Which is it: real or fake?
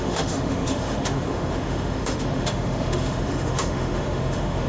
fake